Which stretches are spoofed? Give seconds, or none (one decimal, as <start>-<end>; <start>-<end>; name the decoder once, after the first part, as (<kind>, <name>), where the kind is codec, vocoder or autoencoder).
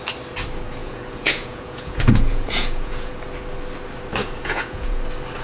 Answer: 0.8-3.1 (vocoder, Vocos); 4.2-5.0